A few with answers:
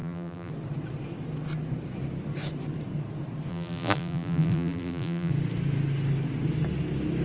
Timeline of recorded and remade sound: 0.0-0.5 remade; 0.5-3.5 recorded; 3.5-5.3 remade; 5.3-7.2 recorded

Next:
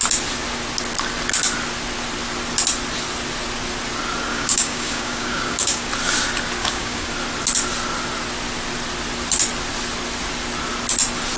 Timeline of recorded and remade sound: 0.0-4.3 recorded; 4.3-5.9 remade; 5.9-6.6 recorded; 6.6-7.1 remade; 7.1-11.4 recorded

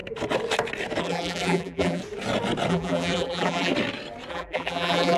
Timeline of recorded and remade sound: 0.0-1.0 recorded; 1.0-2.0 remade; 2.0-2.7 recorded; 2.7-3.7 remade; 3.7-4.3 recorded; 4.3-5.2 remade